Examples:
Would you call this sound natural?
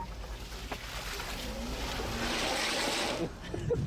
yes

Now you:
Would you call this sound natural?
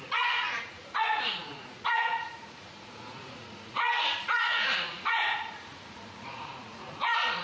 no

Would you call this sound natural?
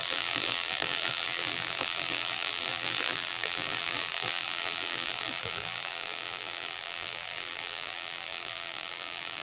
no